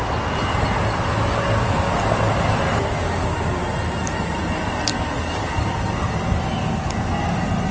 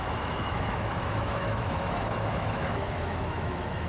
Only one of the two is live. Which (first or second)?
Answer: first